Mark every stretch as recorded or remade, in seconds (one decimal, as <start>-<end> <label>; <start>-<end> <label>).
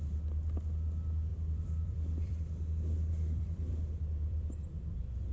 0.0-1.3 recorded; 1.3-4.5 remade; 4.5-5.3 recorded